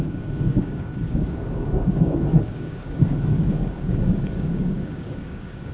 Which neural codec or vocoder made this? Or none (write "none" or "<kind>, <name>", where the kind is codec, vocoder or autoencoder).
codec, DAC